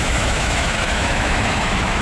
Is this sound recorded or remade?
remade